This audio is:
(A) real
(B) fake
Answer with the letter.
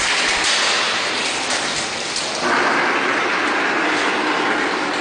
A